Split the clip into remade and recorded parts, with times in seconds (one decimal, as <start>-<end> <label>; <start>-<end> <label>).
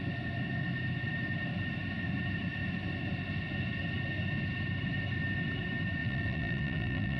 0.0-6.0 recorded; 6.0-7.2 remade